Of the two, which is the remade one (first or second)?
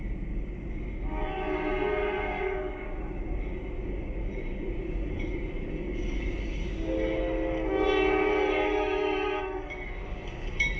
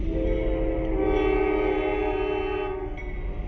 first